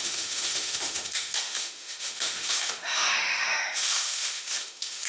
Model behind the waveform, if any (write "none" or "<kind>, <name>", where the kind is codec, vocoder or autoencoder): autoencoder, DAC-VAE